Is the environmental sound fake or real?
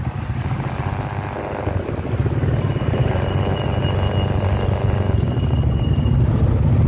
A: real